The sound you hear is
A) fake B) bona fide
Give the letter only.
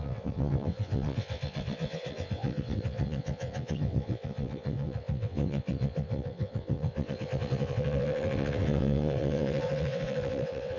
A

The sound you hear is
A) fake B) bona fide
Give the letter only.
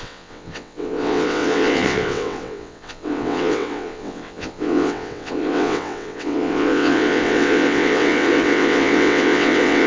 A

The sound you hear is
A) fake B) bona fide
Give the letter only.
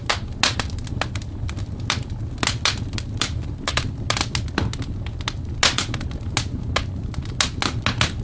B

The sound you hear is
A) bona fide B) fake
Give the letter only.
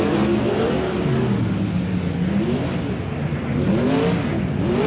A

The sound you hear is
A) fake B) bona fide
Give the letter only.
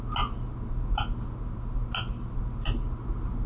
B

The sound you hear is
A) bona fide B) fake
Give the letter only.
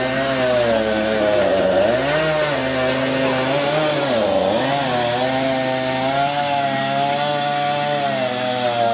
A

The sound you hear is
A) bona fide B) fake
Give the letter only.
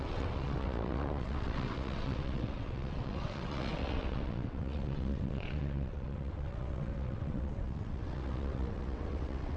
B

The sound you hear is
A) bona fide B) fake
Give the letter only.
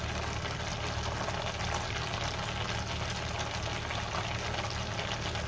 A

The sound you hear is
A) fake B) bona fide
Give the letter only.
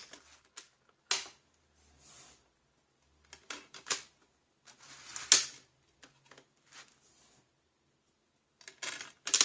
B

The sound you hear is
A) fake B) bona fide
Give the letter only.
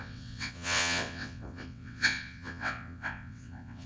A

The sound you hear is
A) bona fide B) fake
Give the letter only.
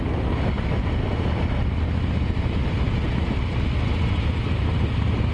A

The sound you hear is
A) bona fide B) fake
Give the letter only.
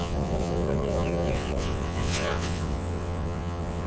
B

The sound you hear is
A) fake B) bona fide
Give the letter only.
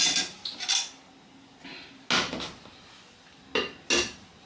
B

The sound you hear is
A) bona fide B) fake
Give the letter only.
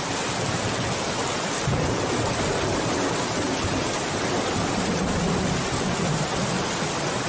A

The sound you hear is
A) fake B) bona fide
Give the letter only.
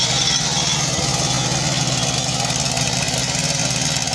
B